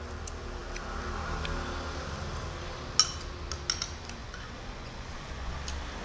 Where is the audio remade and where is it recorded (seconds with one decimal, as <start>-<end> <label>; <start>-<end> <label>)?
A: 0.0-4.2 recorded; 4.2-5.5 remade; 5.5-6.0 recorded